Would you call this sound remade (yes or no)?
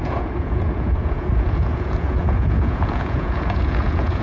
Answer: yes